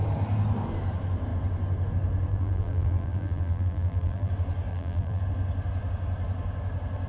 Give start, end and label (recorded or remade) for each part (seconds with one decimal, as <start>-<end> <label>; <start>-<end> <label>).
0.0-2.3 recorded; 2.3-4.3 remade; 4.3-4.7 recorded; 4.7-5.2 remade; 5.2-7.1 recorded